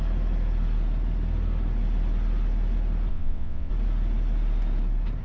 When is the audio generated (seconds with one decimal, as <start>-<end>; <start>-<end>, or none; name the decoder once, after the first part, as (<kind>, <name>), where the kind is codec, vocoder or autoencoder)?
3.1-3.7 (vocoder, WaveNeXt)